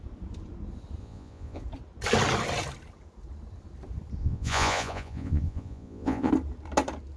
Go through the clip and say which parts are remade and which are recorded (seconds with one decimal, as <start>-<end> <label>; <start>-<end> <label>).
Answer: 0.0-1.0 recorded; 1.0-1.6 remade; 1.6-4.2 recorded; 4.2-6.3 remade; 6.3-7.2 recorded

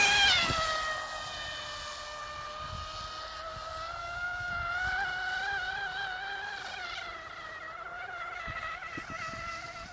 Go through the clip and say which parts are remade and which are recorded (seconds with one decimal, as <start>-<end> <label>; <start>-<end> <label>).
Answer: 0.0-4.0 recorded; 4.0-4.5 remade; 4.5-9.9 recorded

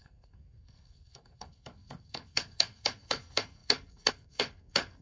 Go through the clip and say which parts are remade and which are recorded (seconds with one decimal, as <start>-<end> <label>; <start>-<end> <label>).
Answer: 0.0-5.0 remade